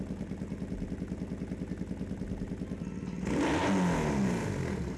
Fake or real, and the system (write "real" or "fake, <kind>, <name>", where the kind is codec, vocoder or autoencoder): real